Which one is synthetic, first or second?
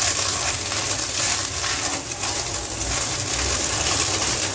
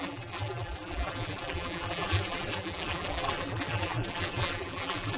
second